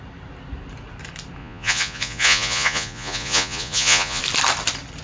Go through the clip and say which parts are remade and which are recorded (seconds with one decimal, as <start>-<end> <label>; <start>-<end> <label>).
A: 0.0-1.4 recorded; 1.4-4.2 remade; 4.2-5.0 recorded